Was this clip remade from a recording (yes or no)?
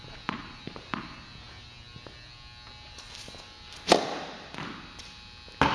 no